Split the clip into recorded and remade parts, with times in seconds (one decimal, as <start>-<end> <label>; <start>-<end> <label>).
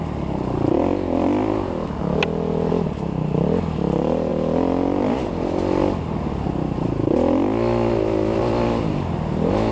0.0-9.7 recorded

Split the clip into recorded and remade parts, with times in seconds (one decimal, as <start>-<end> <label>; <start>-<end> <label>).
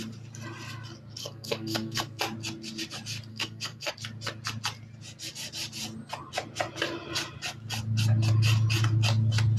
0.0-1.2 recorded; 1.2-2.2 remade; 2.2-3.3 recorded; 3.3-3.9 remade; 3.9-9.6 recorded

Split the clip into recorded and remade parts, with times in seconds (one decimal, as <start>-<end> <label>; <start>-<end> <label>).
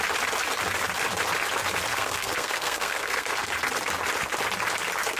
0.0-1.9 recorded; 1.9-3.5 remade; 3.5-5.2 recorded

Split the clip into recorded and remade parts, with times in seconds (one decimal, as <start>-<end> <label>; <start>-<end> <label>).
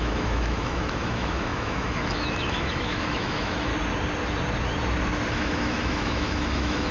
0.0-3.7 remade; 3.7-5.3 recorded; 5.3-6.9 remade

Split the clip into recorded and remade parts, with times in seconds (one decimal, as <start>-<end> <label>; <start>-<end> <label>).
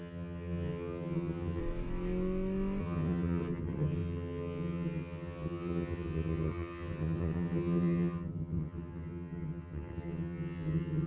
0.0-1.6 remade; 1.6-2.8 recorded; 2.8-11.1 remade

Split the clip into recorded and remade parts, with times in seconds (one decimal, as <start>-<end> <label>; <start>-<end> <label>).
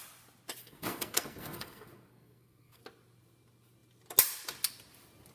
0.0-0.6 recorded; 0.6-2.8 remade; 2.8-5.3 recorded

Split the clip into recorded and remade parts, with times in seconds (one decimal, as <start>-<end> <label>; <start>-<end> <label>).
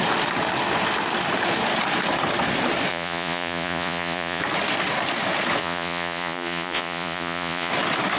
0.0-2.9 recorded; 2.9-4.4 remade; 4.4-5.6 recorded; 5.6-7.7 remade; 7.7-8.2 recorded